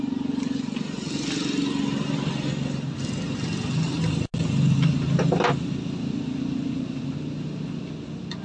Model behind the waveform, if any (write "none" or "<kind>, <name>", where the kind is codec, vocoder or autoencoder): none